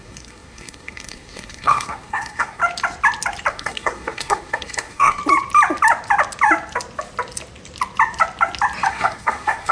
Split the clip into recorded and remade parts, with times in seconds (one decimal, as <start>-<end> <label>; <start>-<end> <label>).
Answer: 0.0-2.6 remade; 2.6-3.5 recorded; 3.5-5.2 remade; 5.2-8.9 recorded; 8.9-9.7 remade